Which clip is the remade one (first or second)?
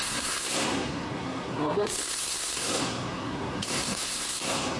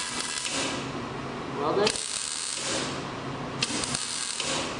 first